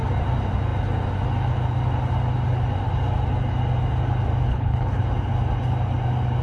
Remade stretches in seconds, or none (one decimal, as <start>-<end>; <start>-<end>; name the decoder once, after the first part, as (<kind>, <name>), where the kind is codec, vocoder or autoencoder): 4.5-5.0 (codec, HILCodec)